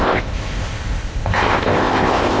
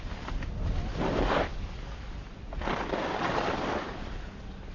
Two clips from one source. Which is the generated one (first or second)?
first